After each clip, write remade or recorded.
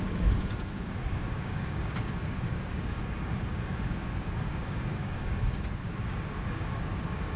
remade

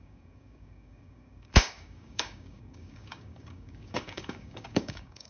remade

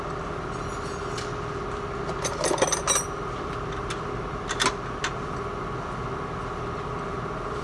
recorded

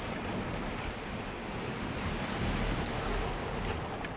recorded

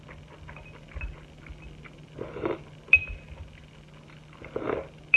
recorded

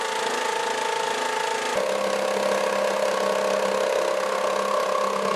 recorded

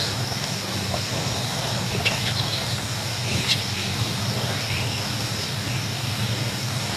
remade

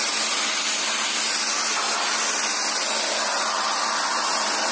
recorded